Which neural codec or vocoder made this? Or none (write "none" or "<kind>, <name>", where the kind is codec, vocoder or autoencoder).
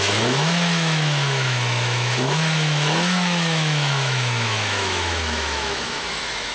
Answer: autoencoder, DAC-VAE